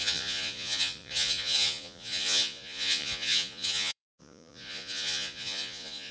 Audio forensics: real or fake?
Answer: fake